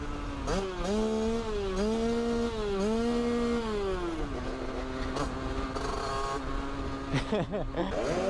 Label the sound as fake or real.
real